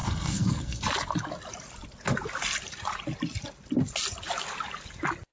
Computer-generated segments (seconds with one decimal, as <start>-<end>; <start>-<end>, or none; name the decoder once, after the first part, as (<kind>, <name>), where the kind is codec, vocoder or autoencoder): 0.0-0.8 (codec, SNAC)